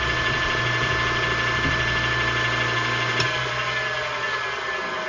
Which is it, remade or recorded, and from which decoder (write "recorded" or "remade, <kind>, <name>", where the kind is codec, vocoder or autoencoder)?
recorded